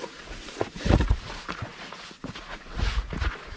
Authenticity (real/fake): fake